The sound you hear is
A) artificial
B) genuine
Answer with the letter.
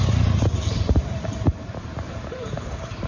A